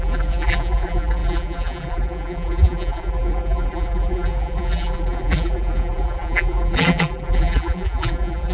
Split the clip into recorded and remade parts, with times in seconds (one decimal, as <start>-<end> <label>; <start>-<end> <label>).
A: 0.0-8.5 remade